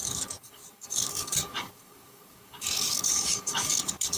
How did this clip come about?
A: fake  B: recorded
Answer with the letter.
A